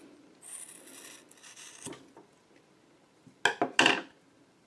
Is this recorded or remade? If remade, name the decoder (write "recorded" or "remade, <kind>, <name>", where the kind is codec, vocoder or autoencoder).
recorded